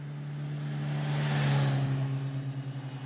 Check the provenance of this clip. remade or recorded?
recorded